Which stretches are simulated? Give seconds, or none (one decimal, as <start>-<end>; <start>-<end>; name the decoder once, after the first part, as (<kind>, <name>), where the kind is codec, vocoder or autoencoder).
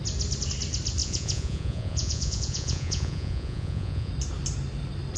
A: 1.0-4.1 (vocoder, Vocos)